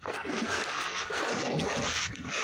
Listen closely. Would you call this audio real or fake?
fake